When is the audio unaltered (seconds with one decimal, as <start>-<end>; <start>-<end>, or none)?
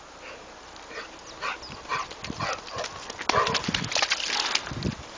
0.0-5.2